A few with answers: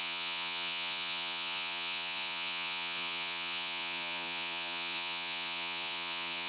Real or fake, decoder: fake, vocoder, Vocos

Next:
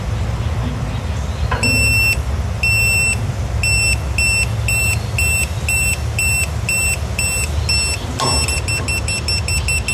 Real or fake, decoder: real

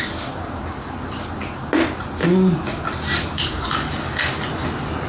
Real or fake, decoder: real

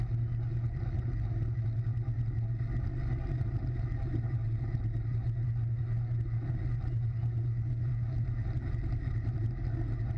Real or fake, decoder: real